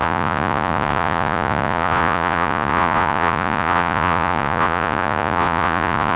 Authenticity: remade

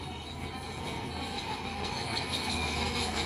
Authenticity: remade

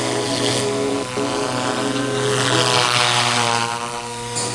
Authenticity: recorded